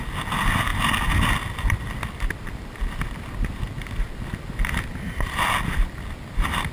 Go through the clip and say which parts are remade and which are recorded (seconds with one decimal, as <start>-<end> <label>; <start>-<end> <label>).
0.0-6.7 recorded